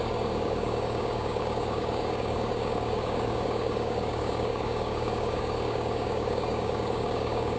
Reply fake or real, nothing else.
fake